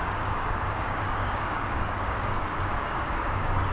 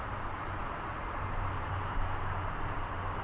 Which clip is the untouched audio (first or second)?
second